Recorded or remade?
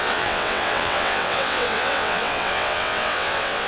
remade